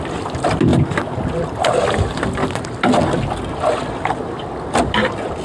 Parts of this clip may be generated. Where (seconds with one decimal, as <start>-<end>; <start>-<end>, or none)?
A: none